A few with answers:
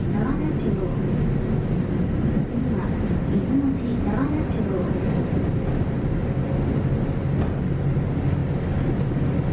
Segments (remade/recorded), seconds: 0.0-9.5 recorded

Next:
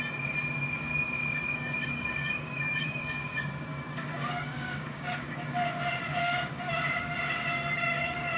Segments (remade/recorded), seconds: 0.0-1.2 recorded; 1.2-5.8 remade; 5.8-6.2 recorded; 6.2-8.4 remade

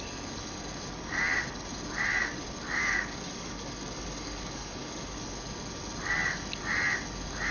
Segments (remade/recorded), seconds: 0.0-2.8 recorded; 2.8-5.2 remade; 5.2-7.5 recorded

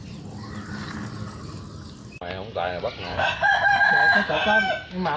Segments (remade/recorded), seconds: 0.0-3.1 recorded; 3.1-3.8 remade; 3.8-5.2 recorded